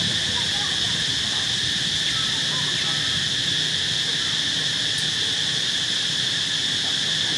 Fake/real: real